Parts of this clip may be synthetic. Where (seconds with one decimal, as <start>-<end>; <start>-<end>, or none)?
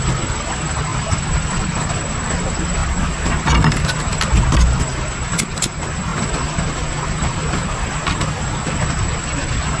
none